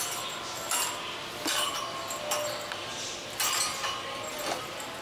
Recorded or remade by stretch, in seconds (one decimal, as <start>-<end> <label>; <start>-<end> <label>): 0.0-5.0 recorded